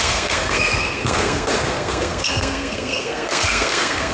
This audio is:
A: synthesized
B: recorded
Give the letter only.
A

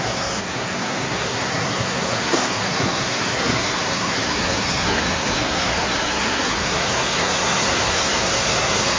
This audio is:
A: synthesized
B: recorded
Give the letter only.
A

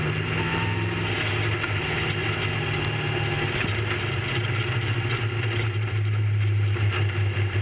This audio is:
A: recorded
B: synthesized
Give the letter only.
A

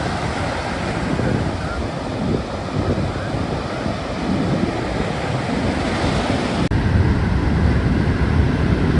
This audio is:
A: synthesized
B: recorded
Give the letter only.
B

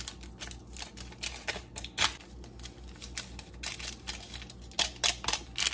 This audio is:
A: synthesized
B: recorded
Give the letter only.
B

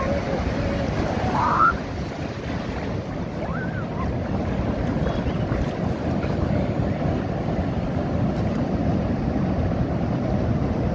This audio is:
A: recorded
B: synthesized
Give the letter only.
A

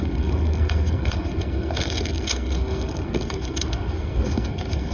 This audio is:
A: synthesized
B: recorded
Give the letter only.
A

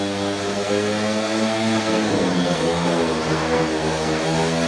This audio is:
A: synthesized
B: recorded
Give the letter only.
A